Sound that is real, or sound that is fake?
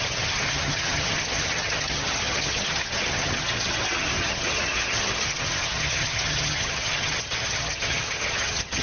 fake